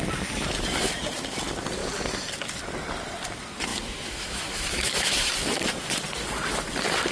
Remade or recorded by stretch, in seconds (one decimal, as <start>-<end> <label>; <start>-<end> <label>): 0.0-3.7 recorded; 3.7-5.1 remade; 5.1-7.1 recorded